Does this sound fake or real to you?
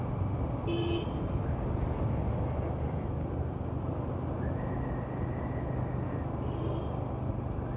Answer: real